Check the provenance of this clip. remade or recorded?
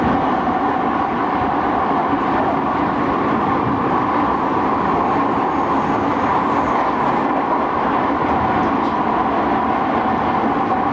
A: remade